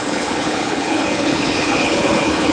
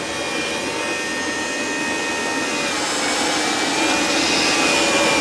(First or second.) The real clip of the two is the second